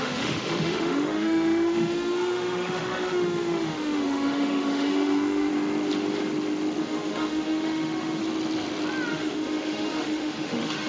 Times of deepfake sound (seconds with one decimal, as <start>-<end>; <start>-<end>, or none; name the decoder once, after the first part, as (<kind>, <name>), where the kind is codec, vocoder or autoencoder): 0.0-5.5 (autoencoder, DAC-VAE); 6.8-8.2; 9.1-10.9